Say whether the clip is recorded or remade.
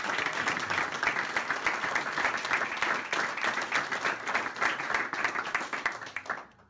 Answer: recorded